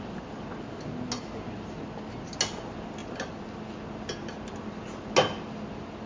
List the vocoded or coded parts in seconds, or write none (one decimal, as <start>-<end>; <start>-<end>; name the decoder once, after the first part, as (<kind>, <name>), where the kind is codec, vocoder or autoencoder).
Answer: none